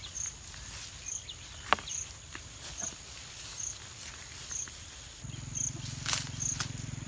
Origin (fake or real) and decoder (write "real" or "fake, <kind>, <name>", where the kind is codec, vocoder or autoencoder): real